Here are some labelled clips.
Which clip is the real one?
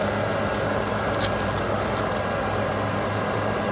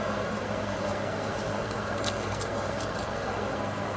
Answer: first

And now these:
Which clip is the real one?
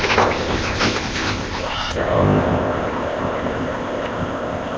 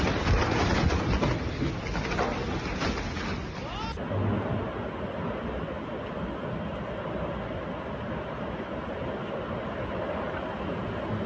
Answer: second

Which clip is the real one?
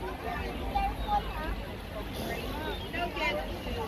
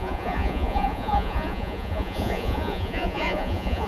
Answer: first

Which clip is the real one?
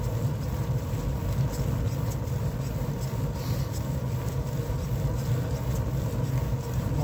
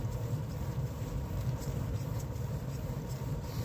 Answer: first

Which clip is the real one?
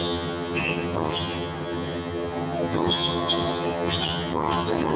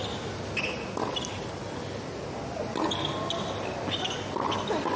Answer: second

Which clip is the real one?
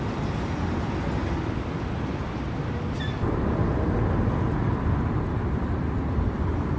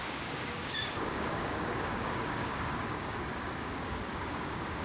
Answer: first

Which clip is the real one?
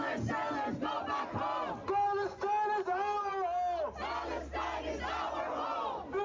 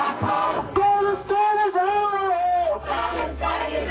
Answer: first